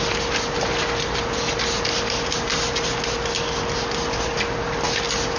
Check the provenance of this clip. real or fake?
real